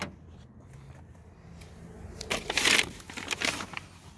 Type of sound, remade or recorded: recorded